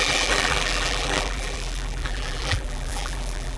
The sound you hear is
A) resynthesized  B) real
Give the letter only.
A